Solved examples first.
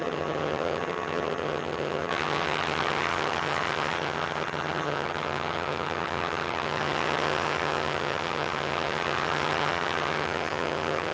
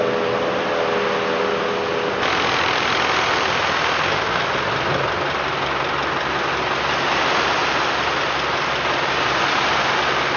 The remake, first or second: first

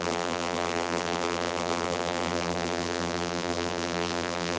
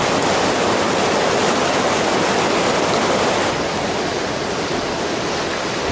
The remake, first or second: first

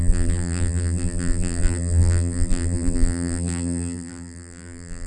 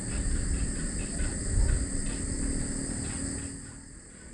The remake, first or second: first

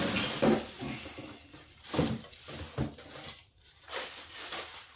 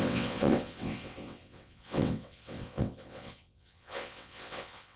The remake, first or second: second